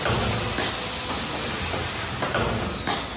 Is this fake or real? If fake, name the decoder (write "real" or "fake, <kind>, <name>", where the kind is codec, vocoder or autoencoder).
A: real